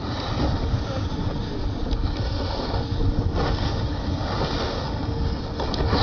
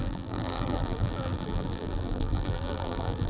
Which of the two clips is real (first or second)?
first